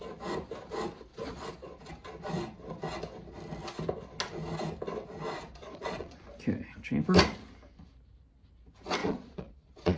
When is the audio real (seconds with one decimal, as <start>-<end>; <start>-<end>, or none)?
0.0-1.1; 1.9-5.6; 6.2-9.0